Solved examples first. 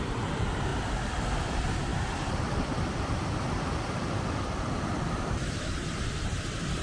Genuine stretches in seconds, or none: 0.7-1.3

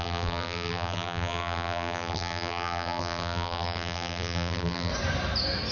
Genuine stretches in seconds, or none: 4.9-5.7

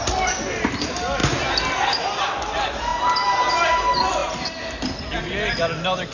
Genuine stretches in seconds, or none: 1.2-2.2; 2.9-3.5; 4.2-5.2

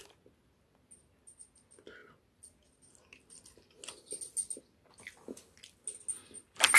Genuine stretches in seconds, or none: 0.0-6.8

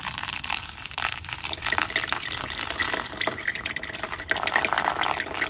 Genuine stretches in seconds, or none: 2.8-3.4

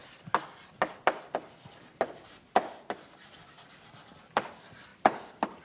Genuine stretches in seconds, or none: 0.0-5.6